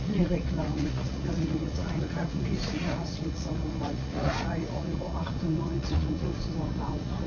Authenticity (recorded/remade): remade